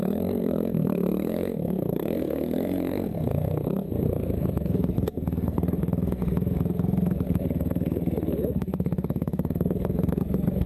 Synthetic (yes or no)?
yes